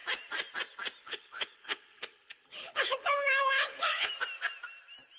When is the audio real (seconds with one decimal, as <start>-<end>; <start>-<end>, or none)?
0.0-1.0; 4.1-5.2